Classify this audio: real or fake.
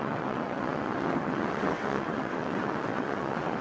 fake